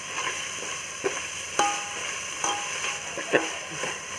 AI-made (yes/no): yes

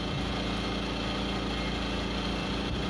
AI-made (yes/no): no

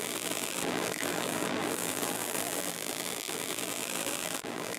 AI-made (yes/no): yes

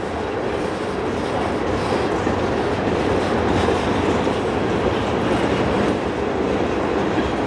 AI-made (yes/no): no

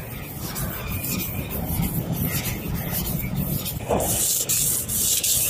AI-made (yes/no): no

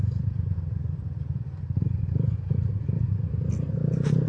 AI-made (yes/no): yes